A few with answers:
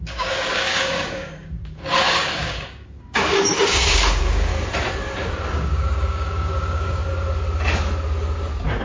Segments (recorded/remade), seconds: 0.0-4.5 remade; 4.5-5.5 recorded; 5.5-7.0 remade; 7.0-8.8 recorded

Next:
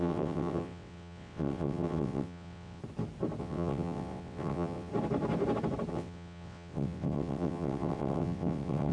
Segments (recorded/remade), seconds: 0.0-2.8 remade; 2.8-3.4 recorded; 3.4-4.9 remade; 4.9-5.9 recorded; 5.9-8.9 remade

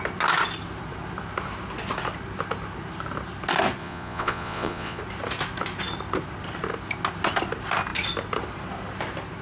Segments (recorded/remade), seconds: 0.0-3.8 recorded; 3.8-5.0 remade; 5.0-9.4 recorded

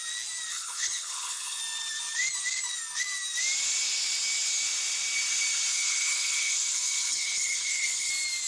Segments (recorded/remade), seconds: 0.0-0.5 recorded; 0.5-1.6 remade; 1.6-5.7 recorded; 5.7-8.1 remade; 8.1-8.5 recorded

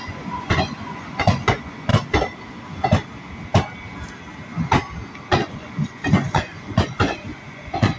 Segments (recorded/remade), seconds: 0.0-1.9 remade; 1.9-5.3 recorded; 5.3-8.0 remade

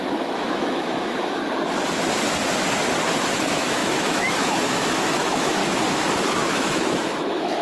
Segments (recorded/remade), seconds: 0.0-1.4 remade; 1.4-3.3 recorded; 3.3-5.6 remade; 5.6-6.5 recorded; 6.5-7.6 remade

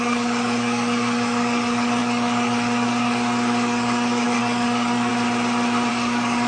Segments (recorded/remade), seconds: 0.0-5.1 remade; 5.1-5.9 recorded; 5.9-6.5 remade

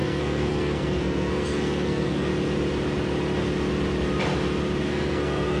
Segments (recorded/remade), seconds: 0.0-2.3 remade; 2.3-4.8 recorded; 4.8-5.6 remade